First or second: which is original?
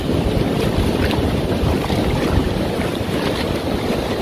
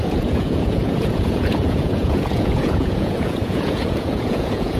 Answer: first